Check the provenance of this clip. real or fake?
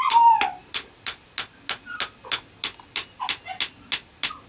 real